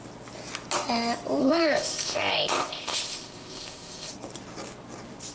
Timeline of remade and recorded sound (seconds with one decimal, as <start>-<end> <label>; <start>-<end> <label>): 0.0-1.4 recorded; 1.4-4.1 remade; 4.1-5.3 recorded